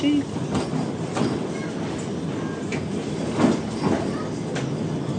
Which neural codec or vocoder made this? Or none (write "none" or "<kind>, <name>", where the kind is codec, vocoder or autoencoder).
none